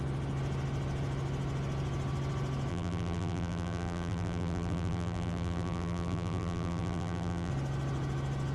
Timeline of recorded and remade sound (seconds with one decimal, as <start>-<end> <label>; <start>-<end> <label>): 0.0-2.7 recorded; 2.7-7.5 remade; 7.5-8.5 recorded